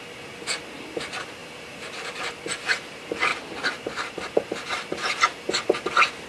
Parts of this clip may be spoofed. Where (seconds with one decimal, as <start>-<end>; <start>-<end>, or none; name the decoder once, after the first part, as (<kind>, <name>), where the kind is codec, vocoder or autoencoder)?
1.4-2.3 (vocoder, BigVGAN v2); 3.3-4.5

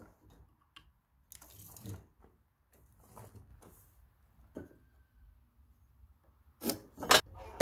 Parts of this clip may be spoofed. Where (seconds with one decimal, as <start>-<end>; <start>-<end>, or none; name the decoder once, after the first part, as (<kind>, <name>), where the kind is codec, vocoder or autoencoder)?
none

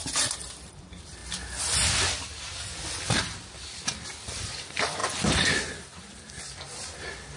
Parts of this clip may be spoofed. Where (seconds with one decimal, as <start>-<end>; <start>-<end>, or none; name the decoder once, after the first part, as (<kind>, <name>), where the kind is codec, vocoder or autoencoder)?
0.0-1.2 (vocoder, BigVGAN v2); 4.3-5.0

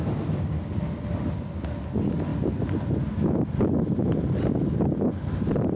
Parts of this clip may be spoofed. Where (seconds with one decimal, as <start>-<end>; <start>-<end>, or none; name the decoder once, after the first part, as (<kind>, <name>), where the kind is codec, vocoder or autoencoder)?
none

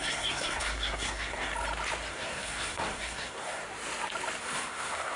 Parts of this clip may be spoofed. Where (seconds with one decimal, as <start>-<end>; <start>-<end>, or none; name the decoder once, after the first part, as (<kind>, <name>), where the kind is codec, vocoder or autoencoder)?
0.0-1.5 (codec, SNAC); 2.1-3.6; 4.4-5.2